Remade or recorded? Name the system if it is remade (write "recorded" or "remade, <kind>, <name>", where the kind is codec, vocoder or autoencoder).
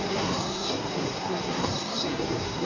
remade, codec, SNAC